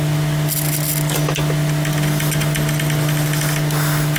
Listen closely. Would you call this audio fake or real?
real